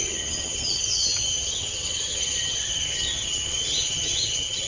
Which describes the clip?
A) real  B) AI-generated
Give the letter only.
B